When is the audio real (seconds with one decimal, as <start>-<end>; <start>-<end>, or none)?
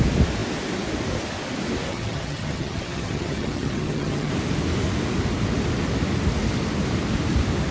0.0-1.9; 4.3-7.7